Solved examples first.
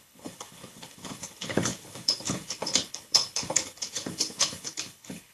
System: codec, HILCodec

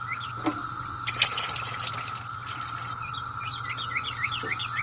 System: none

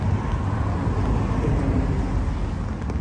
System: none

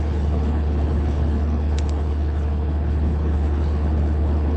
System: codec, HILCodec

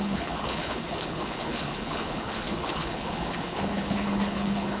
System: codec, HILCodec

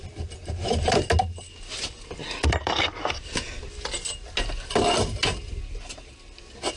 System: none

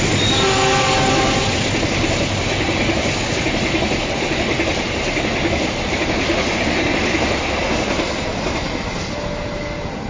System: none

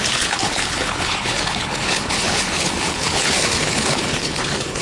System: codec, HILCodec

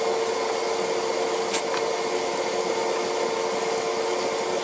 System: none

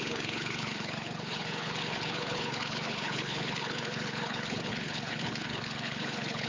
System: codec, HILCodec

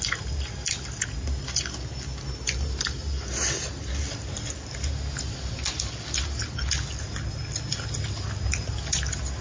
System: none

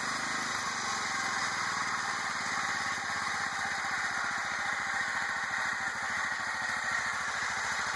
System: none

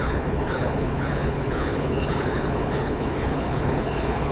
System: codec, HILCodec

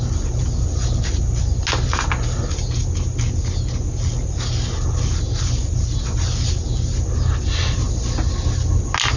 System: none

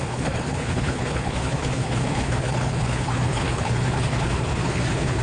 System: codec, HILCodec